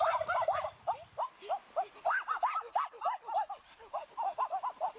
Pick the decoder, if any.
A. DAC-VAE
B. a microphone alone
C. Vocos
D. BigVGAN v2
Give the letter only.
B